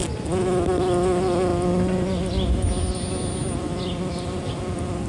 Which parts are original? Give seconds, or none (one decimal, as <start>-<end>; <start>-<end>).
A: 0.0-5.1